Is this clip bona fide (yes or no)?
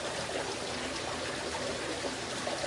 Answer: yes